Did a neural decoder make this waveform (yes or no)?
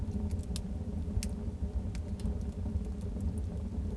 no